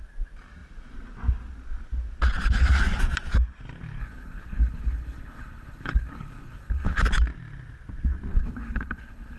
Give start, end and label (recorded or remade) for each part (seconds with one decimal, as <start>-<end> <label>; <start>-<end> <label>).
0.0-4.0 recorded; 4.0-7.0 remade; 7.0-8.3 recorded; 8.3-9.4 remade